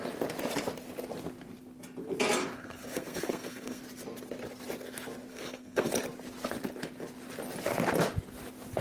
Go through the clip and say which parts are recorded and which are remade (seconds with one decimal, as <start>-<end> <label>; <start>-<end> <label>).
0.0-2.4 recorded; 2.4-3.8 remade; 3.8-5.3 recorded; 5.3-5.9 remade; 5.9-8.8 recorded